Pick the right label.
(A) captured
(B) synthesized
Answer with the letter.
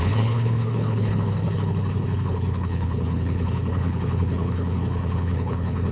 B